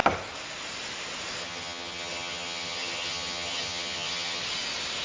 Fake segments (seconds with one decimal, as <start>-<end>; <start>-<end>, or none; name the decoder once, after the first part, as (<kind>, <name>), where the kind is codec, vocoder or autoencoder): 1.4-4.4 (vocoder, HiFi-GAN)